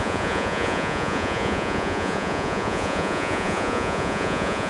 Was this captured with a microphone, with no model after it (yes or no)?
no